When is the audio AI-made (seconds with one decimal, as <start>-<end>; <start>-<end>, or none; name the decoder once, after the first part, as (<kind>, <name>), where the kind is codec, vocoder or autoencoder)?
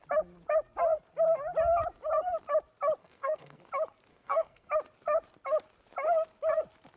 3.0-3.6 (codec, SNAC); 4.1-4.7